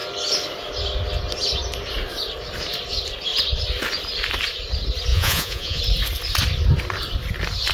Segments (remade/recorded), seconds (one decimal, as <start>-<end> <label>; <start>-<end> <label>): 0.0-5.1 recorded; 5.1-5.8 remade; 5.8-7.7 recorded

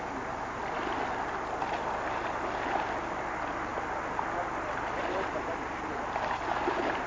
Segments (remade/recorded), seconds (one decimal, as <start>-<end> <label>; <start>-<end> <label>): 0.0-7.1 recorded